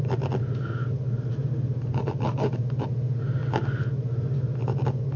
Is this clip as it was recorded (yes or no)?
yes